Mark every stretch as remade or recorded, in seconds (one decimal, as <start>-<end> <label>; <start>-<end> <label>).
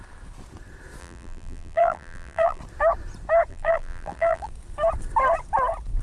0.0-1.0 recorded; 1.0-2.6 remade; 2.6-3.5 recorded; 3.5-4.5 remade; 4.5-6.0 recorded